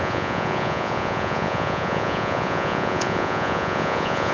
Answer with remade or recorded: remade